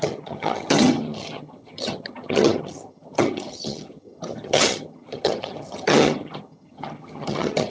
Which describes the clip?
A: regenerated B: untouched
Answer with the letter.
A